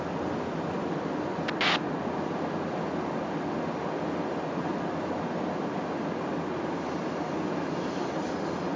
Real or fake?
real